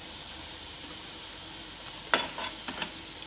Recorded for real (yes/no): yes